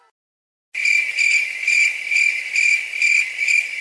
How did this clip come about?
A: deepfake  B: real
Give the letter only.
B